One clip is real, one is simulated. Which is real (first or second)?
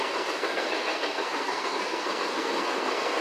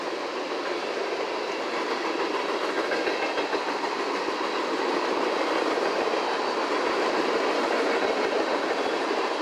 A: second